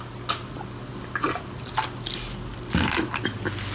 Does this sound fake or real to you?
real